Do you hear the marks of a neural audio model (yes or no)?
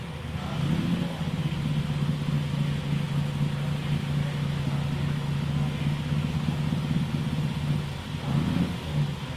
no